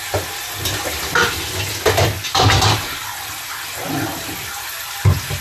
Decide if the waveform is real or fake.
real